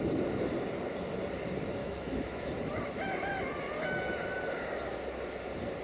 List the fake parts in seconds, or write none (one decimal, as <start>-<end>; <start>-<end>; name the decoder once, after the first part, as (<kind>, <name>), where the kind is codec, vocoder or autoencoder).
1.8-2.5 (autoencoder, DAC-VAE)